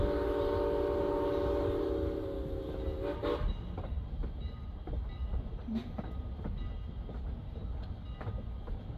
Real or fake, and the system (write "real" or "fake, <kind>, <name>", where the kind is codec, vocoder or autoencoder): real